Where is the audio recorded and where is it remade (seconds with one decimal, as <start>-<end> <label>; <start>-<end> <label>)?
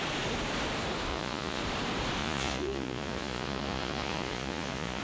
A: 0.0-1.1 recorded; 1.1-1.6 remade; 1.6-2.2 recorded; 2.2-5.0 remade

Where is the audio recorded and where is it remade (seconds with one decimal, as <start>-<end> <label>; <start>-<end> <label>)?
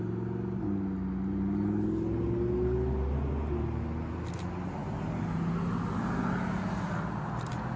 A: 0.0-7.8 recorded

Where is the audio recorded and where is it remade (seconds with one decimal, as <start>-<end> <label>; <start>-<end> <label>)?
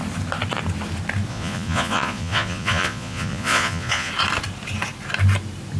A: 0.0-1.3 recorded; 1.3-4.1 remade; 4.1-5.8 recorded